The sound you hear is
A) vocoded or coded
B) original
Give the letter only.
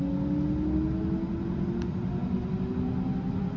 B